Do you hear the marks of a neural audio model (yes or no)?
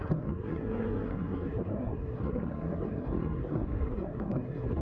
yes